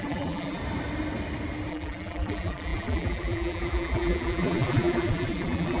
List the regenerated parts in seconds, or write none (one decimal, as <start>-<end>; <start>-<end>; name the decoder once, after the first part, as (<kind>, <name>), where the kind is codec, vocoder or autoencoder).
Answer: 0.0-0.6 (vocoder, BigVGAN v2); 1.7-5.8